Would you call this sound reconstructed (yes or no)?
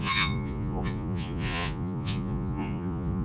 yes